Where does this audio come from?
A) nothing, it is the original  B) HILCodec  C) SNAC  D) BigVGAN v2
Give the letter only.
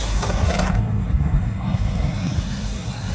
C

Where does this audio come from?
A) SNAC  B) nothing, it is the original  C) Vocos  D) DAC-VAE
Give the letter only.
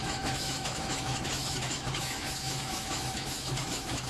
D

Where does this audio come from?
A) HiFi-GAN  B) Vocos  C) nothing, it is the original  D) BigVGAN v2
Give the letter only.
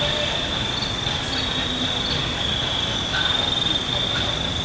C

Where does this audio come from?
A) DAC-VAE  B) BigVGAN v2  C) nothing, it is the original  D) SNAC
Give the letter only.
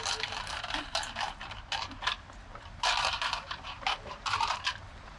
B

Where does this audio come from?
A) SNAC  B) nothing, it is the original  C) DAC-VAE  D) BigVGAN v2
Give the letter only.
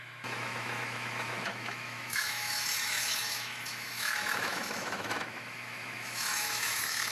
C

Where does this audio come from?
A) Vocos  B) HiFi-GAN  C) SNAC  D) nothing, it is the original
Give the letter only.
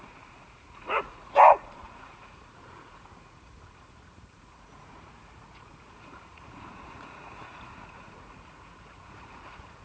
A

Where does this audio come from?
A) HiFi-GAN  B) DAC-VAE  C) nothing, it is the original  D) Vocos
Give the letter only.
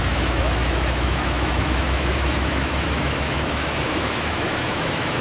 B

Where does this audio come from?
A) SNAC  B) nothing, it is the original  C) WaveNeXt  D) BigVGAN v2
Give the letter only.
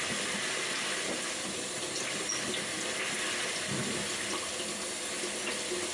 B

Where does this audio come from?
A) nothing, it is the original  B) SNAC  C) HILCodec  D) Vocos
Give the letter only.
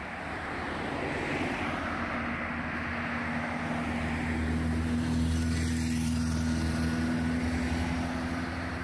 A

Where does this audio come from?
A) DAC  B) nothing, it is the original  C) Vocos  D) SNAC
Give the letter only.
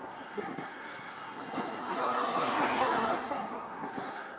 D